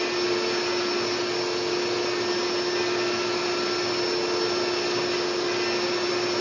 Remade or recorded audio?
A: recorded